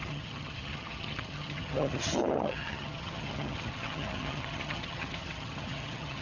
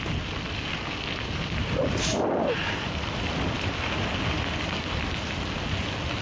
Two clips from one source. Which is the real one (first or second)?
second